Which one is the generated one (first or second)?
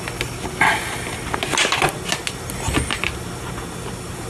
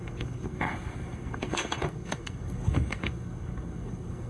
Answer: second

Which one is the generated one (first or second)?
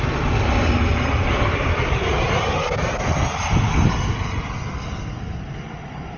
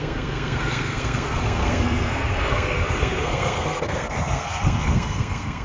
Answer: second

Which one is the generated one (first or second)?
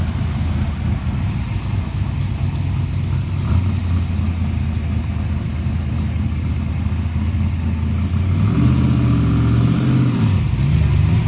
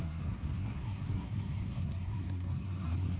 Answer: second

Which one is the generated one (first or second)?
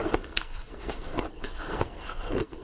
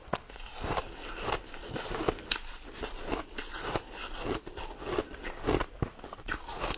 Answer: first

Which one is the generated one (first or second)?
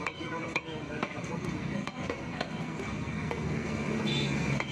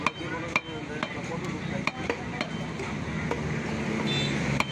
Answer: first